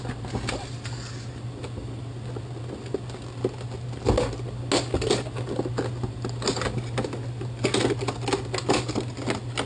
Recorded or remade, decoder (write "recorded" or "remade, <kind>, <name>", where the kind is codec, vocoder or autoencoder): recorded